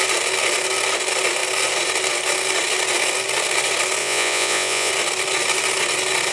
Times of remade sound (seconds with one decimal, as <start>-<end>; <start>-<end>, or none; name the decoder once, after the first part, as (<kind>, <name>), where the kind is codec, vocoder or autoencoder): 4.0-4.9 (vocoder, Vocos)